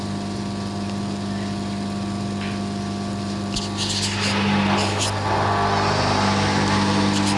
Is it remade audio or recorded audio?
recorded